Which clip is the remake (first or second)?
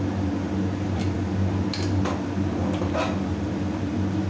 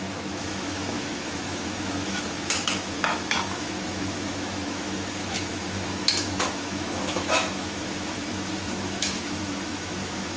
second